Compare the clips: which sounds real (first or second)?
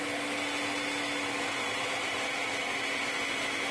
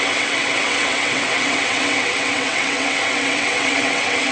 first